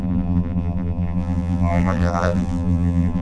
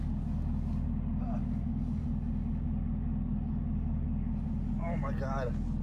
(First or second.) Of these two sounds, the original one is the second